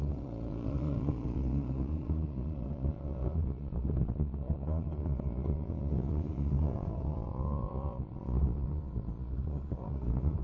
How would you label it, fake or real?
fake